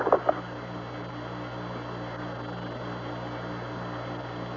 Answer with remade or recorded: recorded